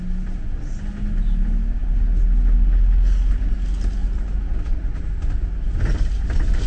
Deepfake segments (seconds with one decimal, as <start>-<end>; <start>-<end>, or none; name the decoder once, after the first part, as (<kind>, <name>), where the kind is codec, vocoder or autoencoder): none